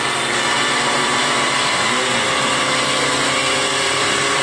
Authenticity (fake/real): fake